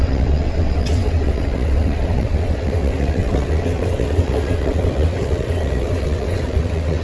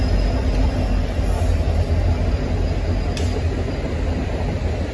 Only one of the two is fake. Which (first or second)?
first